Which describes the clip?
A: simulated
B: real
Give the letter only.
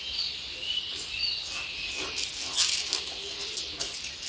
B